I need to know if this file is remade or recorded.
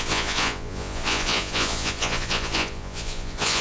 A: remade